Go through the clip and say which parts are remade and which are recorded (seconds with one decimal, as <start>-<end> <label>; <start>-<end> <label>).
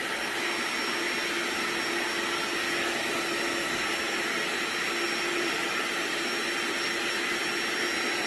0.0-5.3 recorded; 5.3-6.5 remade; 6.5-8.3 recorded